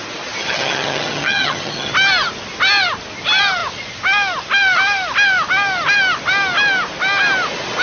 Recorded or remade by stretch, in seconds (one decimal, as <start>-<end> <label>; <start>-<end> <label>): 0.0-0.4 recorded; 0.4-1.9 remade; 1.9-7.8 recorded